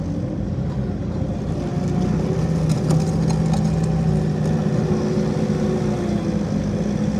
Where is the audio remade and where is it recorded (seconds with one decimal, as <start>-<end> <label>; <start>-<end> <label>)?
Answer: 0.0-7.2 recorded